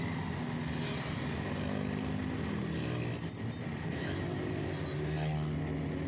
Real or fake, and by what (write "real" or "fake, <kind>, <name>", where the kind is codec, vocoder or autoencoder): real